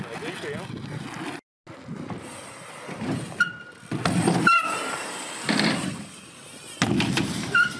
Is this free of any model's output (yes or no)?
yes